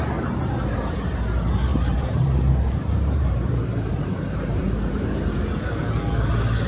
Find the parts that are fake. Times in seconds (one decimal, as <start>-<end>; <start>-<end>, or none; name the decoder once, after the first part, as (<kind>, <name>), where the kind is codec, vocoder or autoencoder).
1.7-5.7 (vocoder, BigVGAN v2)